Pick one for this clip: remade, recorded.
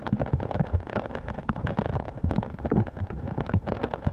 remade